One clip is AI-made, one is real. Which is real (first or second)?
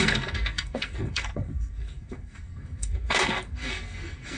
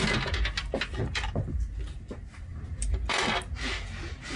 second